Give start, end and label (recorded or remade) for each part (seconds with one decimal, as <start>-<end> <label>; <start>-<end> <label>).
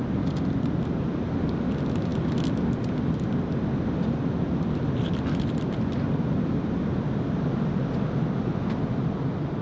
0.0-9.6 recorded